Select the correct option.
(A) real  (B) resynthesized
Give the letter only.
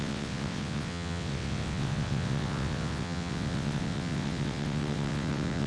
B